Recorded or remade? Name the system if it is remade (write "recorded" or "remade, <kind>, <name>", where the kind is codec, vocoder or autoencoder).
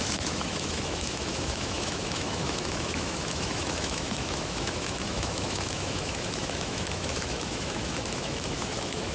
remade, autoencoder, DAC-VAE